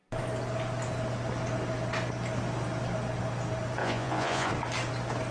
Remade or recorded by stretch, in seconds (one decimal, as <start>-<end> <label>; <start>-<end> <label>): 0.0-3.8 recorded; 3.8-4.5 remade; 4.5-5.3 recorded